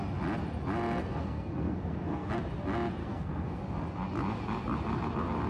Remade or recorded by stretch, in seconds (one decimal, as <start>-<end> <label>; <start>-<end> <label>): 0.0-1.0 recorded; 1.0-2.3 remade; 2.3-3.0 recorded; 3.0-3.6 remade; 3.6-5.5 recorded